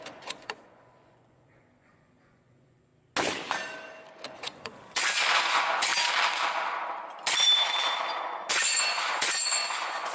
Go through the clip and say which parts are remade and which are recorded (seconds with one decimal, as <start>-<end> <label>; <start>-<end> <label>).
0.0-2.9 remade; 2.9-4.3 recorded; 4.3-5.9 remade; 5.9-8.5 recorded; 8.5-10.1 remade